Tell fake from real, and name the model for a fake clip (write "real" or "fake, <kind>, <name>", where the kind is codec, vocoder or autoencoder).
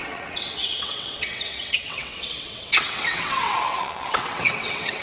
fake, vocoder, WaveNeXt